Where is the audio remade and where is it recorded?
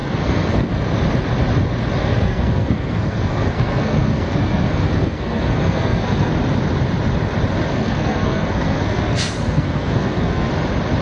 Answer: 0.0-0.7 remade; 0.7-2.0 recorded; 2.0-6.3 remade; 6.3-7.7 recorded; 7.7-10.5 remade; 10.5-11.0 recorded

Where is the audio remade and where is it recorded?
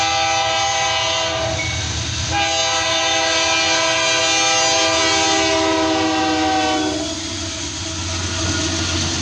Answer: 0.0-9.2 recorded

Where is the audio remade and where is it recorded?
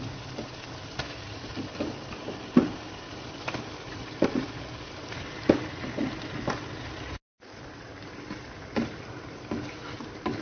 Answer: 0.0-7.3 recorded; 7.3-8.2 remade; 8.2-10.4 recorded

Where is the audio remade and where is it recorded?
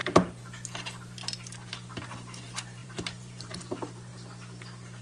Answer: 0.0-2.8 recorded; 2.8-3.6 remade; 3.6-5.0 recorded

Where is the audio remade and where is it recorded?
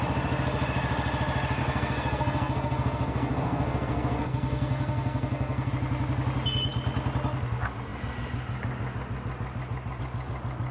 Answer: 0.0-1.6 recorded; 1.6-5.7 remade; 5.7-10.7 recorded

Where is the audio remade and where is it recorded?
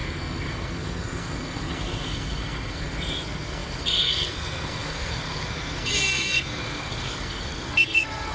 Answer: 0.0-8.3 remade